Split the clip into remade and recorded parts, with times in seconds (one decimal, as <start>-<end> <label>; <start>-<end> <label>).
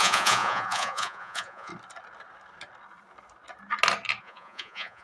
0.0-1.7 remade; 1.7-4.2 recorded; 4.2-5.0 remade